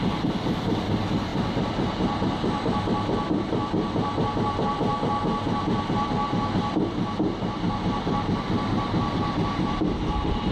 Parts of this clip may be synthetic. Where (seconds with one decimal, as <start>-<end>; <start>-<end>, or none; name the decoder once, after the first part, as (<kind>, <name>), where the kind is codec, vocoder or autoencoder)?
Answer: 0.0-4.9 (vocoder, BigVGAN v2); 5.6-10.5